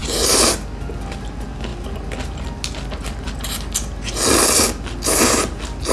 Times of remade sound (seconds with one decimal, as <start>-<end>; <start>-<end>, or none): none